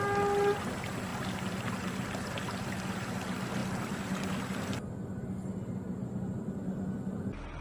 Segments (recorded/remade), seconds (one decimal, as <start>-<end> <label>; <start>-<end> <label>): 0.0-7.6 recorded

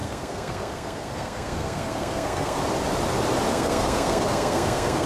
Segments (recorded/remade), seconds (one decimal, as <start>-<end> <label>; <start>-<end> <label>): 0.0-2.6 remade; 2.6-3.5 recorded; 3.5-5.1 remade

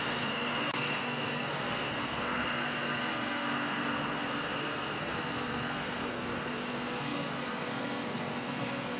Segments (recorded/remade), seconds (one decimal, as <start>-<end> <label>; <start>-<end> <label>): 0.0-9.0 remade

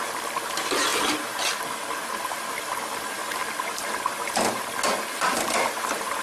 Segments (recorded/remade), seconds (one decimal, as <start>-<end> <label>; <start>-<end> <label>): 0.0-6.2 recorded

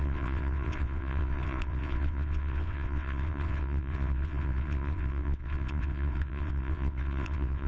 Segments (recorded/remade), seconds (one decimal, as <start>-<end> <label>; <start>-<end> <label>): 0.0-7.7 remade

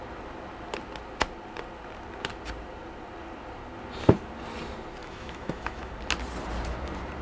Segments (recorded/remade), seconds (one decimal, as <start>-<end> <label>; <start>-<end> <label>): 0.0-5.0 recorded; 5.0-5.9 remade; 5.9-7.2 recorded

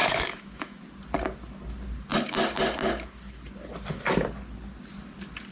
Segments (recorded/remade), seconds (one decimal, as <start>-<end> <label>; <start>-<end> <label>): 0.0-0.8 remade; 0.8-5.5 recorded

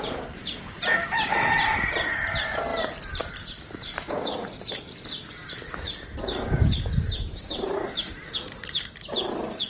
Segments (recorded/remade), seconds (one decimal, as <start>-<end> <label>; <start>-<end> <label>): 0.0-2.7 recorded; 2.7-5.5 remade; 5.5-6.1 recorded; 6.1-8.9 remade; 8.9-9.7 recorded